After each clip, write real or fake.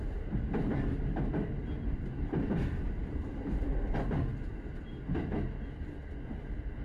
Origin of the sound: real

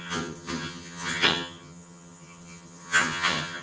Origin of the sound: fake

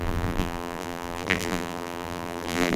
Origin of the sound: fake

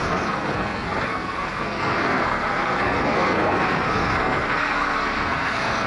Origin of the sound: fake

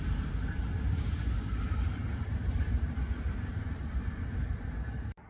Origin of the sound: fake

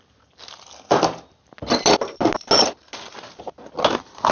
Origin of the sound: real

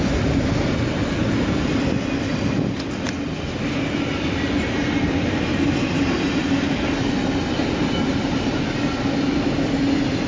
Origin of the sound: real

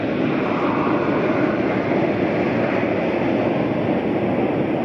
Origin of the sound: real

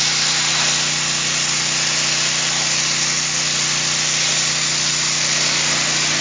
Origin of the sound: real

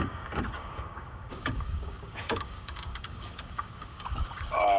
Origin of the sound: fake